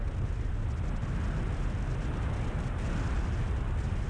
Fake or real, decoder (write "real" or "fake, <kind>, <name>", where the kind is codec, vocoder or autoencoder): real